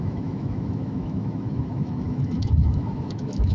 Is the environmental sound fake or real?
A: fake